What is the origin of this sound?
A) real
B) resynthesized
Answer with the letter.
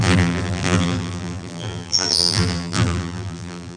B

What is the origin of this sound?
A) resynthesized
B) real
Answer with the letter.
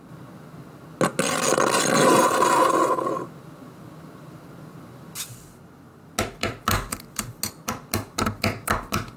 B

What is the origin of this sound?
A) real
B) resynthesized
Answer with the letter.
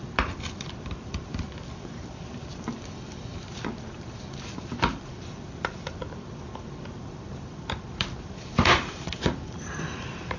B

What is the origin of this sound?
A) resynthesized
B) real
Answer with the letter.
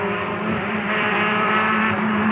A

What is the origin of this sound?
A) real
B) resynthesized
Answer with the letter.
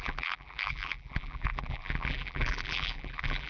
B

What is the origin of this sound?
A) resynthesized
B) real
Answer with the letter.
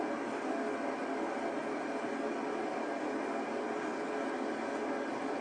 B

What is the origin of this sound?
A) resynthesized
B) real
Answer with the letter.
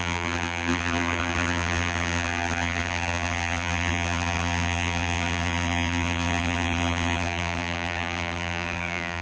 A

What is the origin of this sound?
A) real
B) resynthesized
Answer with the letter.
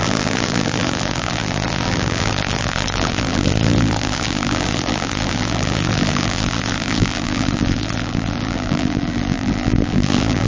B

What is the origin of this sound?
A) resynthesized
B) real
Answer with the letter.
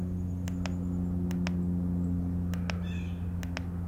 B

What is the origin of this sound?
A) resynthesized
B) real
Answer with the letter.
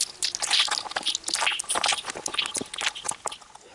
B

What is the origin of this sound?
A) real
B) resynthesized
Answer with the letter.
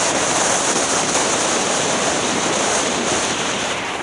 B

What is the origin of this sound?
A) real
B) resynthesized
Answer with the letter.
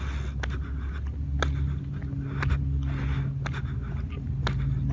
A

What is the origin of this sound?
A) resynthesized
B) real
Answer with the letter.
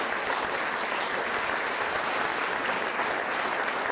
B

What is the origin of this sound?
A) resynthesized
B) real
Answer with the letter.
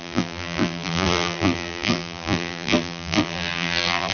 A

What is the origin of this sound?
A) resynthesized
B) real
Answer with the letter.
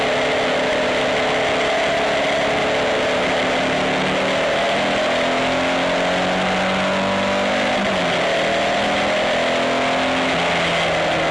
B